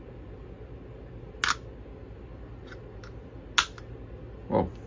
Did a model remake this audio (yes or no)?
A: no